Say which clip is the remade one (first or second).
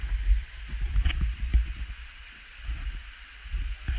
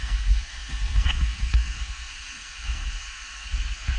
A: second